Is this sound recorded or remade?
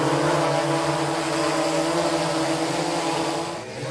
recorded